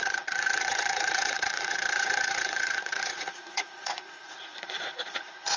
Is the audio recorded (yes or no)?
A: no